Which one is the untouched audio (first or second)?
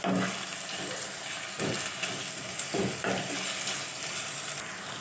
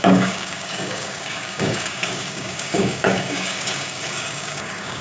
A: first